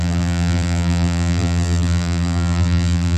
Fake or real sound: fake